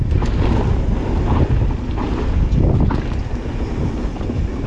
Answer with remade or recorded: recorded